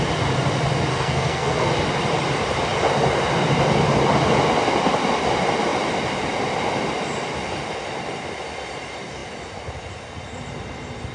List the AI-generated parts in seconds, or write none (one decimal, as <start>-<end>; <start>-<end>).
0.9-1.7